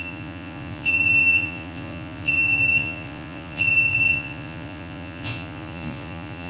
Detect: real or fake fake